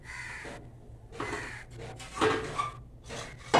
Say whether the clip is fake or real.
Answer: real